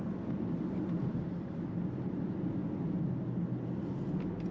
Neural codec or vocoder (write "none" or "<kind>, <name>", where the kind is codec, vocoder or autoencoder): none